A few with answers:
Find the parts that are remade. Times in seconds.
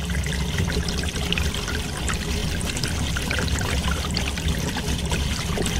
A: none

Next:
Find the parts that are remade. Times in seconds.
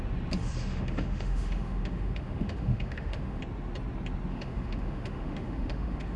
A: 0.4-3.4 (autoencoder, DAC-VAE); 4.3-6.2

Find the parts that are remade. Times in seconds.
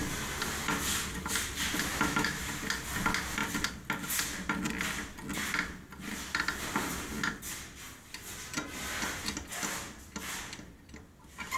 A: 1.9-2.4 (autoencoder, DAC-VAE)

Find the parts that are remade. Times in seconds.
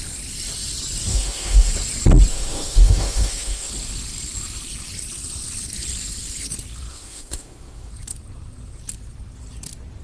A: 1.1-1.7 (autoencoder, DAC-VAE); 2.3-3.7; 6.9-7.9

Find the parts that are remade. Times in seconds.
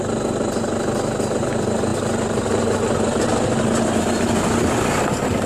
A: none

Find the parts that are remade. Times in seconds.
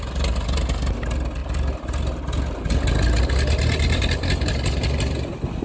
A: none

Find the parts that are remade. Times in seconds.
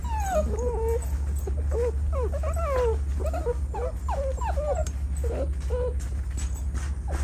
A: none